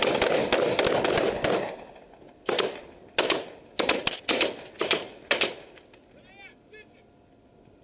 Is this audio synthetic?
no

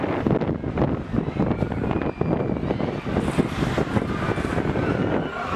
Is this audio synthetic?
no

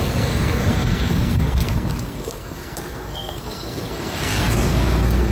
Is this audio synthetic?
yes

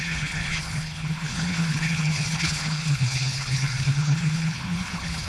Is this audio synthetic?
yes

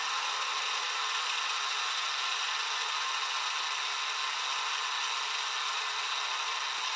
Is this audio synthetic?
no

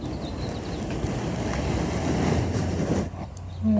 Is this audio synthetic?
no